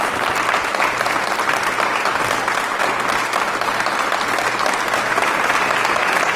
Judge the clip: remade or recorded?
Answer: recorded